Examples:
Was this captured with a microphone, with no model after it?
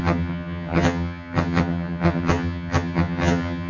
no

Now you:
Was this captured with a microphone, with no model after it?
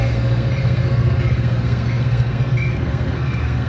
no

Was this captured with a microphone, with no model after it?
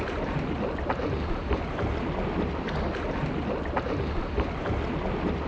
yes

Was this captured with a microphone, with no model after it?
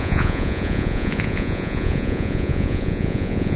no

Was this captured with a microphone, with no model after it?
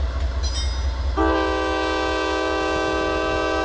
yes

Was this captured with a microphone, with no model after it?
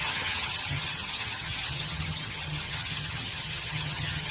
no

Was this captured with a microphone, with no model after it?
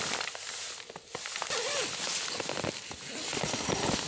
yes